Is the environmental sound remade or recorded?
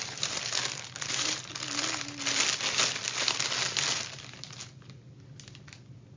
recorded